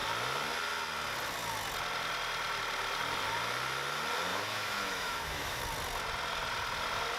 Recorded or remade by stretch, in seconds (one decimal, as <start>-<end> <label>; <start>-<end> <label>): 0.0-4.3 recorded; 4.3-5.6 remade; 5.6-7.2 recorded